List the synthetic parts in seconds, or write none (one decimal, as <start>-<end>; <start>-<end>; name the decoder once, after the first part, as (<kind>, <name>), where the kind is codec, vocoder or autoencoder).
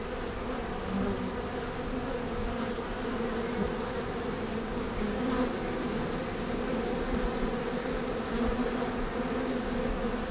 4.6-5.3 (codec, DAC)